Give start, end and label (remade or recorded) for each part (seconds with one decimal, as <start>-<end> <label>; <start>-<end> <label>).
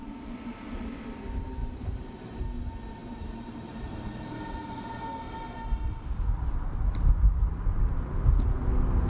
0.0-1.6 recorded; 1.6-2.4 remade; 2.4-3.0 recorded; 3.0-4.5 remade; 4.5-9.1 recorded